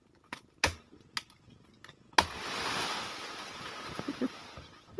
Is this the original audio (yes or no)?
yes